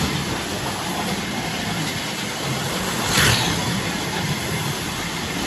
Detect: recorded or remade remade